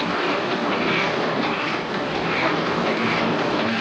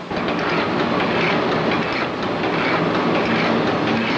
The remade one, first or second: first